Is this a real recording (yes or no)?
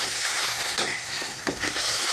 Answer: no